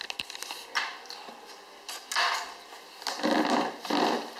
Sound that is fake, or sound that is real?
real